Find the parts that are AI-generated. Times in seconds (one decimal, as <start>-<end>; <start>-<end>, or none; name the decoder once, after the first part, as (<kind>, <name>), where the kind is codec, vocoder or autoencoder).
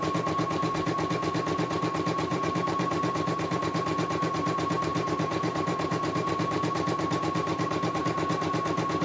2.3-3.6 (vocoder, BigVGAN v2); 4.9-8.0